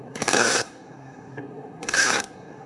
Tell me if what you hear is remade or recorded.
remade